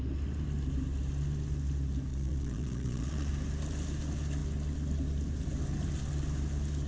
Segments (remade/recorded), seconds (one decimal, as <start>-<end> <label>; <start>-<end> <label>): 0.0-2.1 recorded; 2.1-3.3 remade; 3.3-6.9 recorded

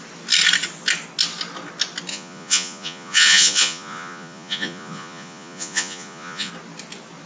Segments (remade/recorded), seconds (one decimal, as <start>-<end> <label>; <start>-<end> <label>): 0.0-2.1 recorded; 2.1-6.5 remade; 6.5-7.3 recorded

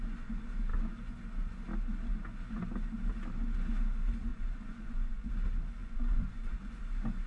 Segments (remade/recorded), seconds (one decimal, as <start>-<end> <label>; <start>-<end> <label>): 0.0-4.3 recorded; 4.3-5.3 remade; 5.3-5.8 recorded; 5.8-6.7 remade; 6.7-7.3 recorded

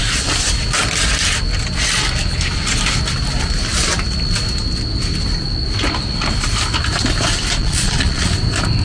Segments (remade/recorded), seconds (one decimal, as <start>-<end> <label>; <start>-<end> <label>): 0.0-7.6 recorded; 7.6-8.3 remade; 8.3-8.8 recorded

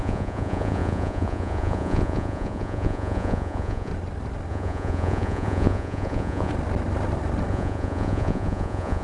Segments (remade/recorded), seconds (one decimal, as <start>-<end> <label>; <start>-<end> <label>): 0.0-3.9 remade; 3.9-4.5 recorded; 4.5-6.5 remade; 6.5-7.5 recorded; 7.5-9.0 remade

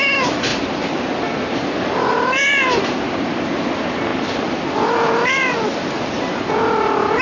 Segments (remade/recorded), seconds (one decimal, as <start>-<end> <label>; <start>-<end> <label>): 0.0-7.2 recorded

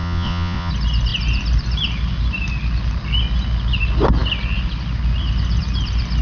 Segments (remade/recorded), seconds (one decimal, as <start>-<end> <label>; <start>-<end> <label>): 0.0-0.7 remade; 0.7-6.2 recorded

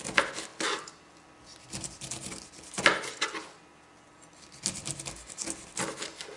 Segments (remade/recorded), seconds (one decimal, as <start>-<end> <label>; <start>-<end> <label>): 0.0-6.4 recorded